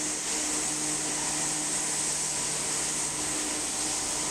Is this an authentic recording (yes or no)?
yes